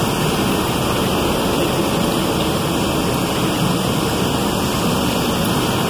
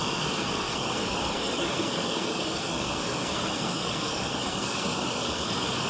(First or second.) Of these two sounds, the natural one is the first